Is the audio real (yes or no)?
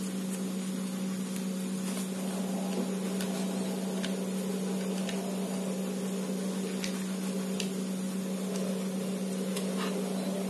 yes